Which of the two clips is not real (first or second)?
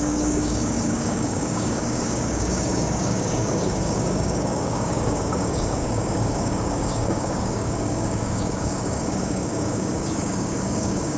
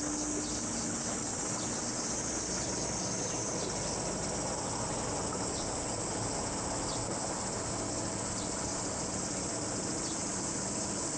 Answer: first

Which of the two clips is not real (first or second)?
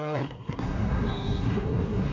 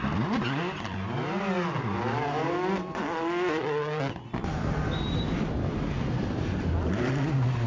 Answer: first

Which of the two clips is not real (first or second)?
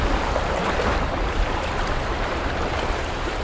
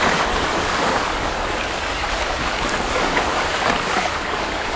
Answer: second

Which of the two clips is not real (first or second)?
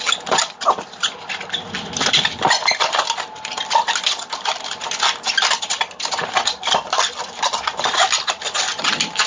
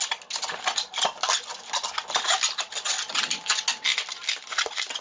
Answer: first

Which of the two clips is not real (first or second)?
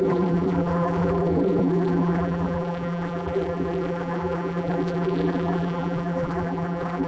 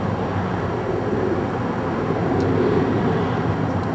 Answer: first